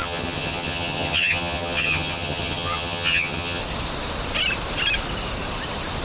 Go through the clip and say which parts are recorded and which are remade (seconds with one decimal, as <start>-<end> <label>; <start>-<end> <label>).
0.0-3.6 remade; 3.6-6.0 recorded